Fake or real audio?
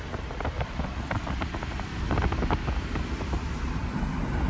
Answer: real